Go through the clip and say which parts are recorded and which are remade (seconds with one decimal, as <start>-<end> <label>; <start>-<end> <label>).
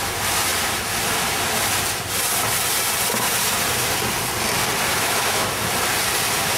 0.0-4.9 recorded; 4.9-5.5 remade; 5.5-6.6 recorded